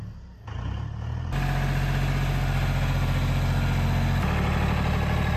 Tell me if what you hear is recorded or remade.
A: recorded